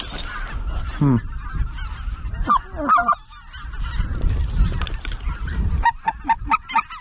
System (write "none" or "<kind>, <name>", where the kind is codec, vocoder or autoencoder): none